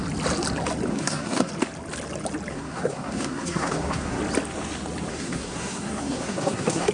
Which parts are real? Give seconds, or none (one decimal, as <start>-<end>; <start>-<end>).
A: 0.0-0.9; 1.5-2.5; 4.2-5.1